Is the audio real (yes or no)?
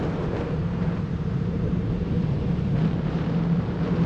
no